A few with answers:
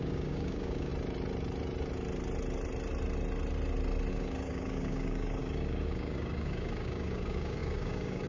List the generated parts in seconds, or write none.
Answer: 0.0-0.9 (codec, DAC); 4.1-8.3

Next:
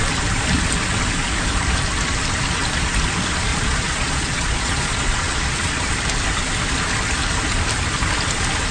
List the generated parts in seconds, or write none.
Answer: 3.5-5.8 (vocoder, Vocos)

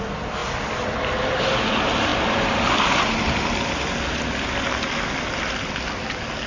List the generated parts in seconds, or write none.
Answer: 2.1-4.9 (vocoder, BigVGAN v2)

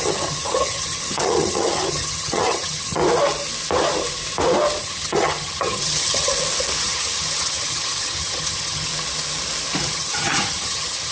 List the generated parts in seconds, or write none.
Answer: 0.0-3.0 (vocoder, HiFi-GAN); 4.8-6.3; 6.8-8.9; 9.8-11.1

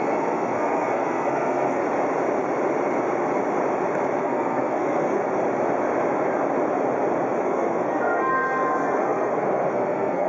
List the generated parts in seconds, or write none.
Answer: 0.0-1.8 (codec, SNAC); 4.2-5.2; 7.4-10.3